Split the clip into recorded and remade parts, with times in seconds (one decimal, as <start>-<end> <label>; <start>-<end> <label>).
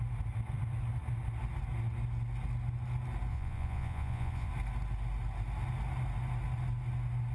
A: 0.0-3.3 recorded; 3.3-4.5 remade; 4.5-7.3 recorded